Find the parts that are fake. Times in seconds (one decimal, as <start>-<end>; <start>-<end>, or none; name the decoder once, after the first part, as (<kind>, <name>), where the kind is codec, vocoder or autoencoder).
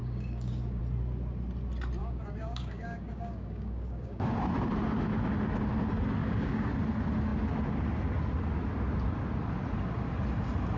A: 0.0-0.8 (codec, DAC); 2.0-4.3; 6.2-6.7